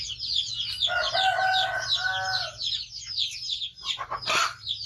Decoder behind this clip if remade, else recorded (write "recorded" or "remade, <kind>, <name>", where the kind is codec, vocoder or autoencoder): recorded